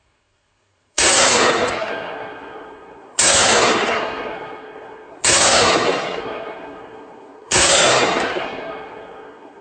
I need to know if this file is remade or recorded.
remade